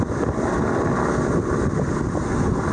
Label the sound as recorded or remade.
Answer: recorded